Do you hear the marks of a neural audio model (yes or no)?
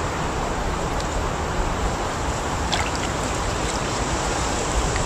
yes